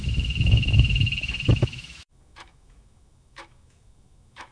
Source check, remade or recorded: remade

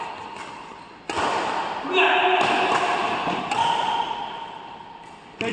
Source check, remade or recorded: recorded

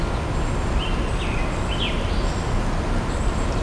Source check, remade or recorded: recorded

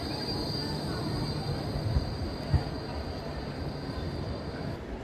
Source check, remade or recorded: recorded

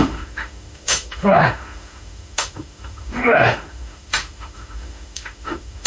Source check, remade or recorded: remade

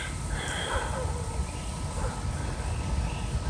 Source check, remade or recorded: recorded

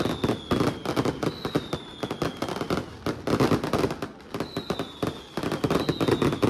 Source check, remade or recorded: recorded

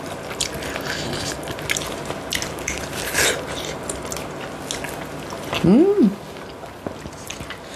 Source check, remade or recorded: recorded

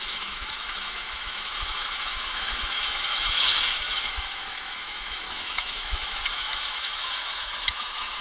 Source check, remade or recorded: remade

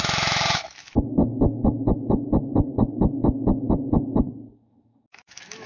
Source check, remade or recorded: remade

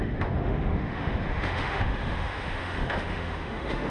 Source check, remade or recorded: remade